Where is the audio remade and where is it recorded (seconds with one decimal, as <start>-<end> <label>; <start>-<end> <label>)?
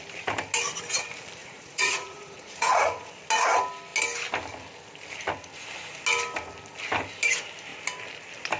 0.0-1.4 recorded; 1.4-3.2 remade; 3.2-8.6 recorded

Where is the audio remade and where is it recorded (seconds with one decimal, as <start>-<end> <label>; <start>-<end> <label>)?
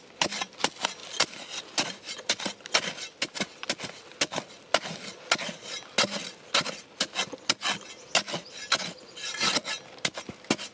0.0-10.7 recorded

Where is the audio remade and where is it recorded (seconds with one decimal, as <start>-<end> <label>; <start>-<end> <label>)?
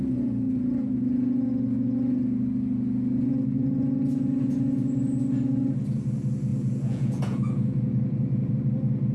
0.0-6.5 recorded; 6.5-8.5 remade; 8.5-9.1 recorded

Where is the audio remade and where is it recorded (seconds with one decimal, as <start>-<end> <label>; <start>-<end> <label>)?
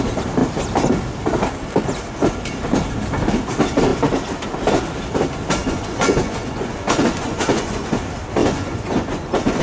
0.0-5.6 recorded; 5.6-7.9 remade; 7.9-8.4 recorded; 8.4-9.6 remade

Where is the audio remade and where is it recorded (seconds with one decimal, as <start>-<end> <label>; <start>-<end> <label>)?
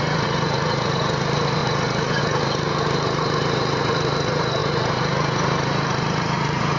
0.0-6.8 remade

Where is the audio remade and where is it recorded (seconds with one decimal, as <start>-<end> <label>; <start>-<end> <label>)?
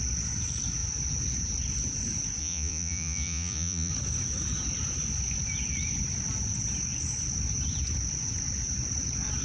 0.0-2.4 recorded; 2.4-3.9 remade; 3.9-9.4 recorded